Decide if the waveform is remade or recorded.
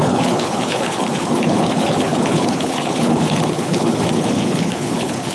remade